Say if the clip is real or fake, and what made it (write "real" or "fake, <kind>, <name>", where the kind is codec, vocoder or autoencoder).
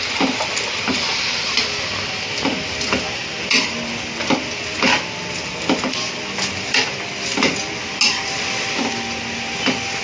real